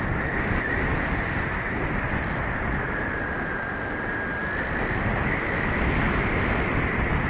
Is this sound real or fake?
real